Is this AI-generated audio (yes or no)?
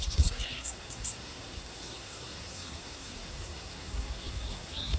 yes